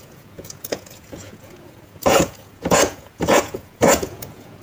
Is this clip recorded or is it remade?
remade